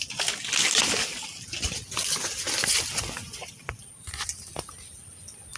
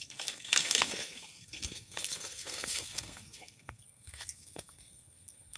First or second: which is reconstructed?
second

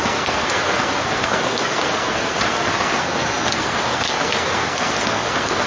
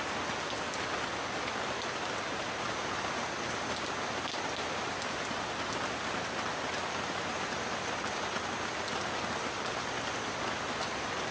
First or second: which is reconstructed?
first